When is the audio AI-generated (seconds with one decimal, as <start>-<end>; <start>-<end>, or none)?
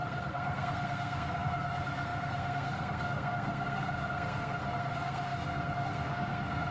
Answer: 0.0-6.7